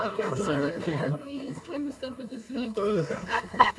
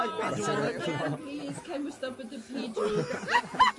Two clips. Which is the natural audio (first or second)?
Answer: second